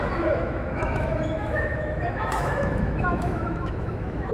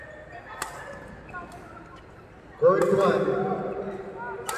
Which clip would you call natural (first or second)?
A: second